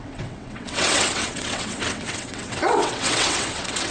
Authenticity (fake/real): fake